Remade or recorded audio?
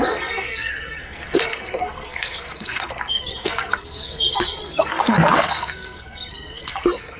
remade